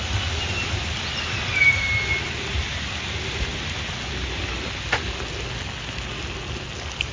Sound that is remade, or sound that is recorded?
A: recorded